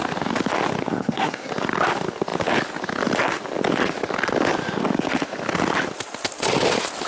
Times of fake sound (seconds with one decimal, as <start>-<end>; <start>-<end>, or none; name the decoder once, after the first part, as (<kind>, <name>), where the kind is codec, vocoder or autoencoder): 0.8-1.5 (codec, SNAC)